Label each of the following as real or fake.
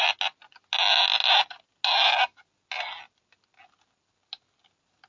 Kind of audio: real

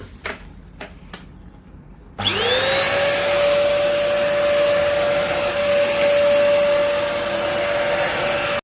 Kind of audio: real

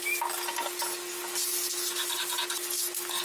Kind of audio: real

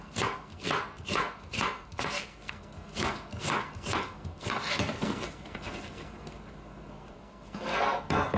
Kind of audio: fake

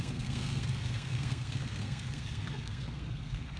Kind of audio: fake